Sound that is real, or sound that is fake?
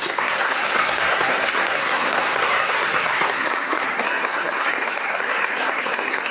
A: fake